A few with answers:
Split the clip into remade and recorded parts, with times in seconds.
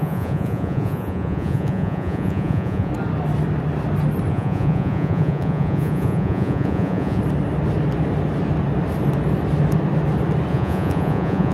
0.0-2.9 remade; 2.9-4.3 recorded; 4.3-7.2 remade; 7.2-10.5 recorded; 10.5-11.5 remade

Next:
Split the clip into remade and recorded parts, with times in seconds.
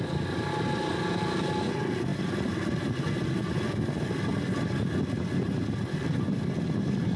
0.0-7.2 recorded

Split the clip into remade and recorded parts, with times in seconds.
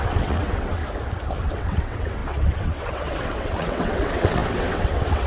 0.0-0.8 remade; 0.8-1.5 recorded; 1.5-5.3 remade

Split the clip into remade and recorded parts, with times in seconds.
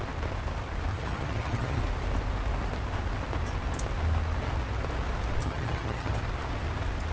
0.0-0.9 recorded; 0.9-1.8 remade; 1.8-5.4 recorded; 5.4-6.2 remade; 6.2-7.1 recorded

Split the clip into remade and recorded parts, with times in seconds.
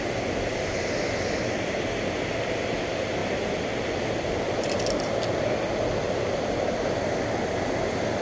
0.0-8.2 recorded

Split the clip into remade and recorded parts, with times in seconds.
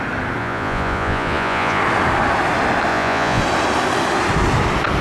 0.0-0.4 recorded; 0.4-1.8 remade; 1.8-2.9 recorded; 2.9-3.4 remade; 3.4-5.0 recorded